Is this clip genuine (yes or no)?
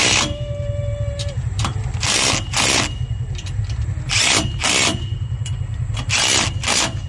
yes